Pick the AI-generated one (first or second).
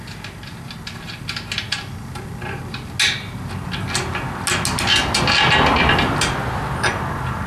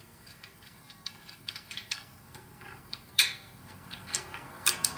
second